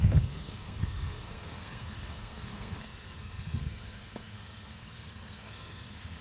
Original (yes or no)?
no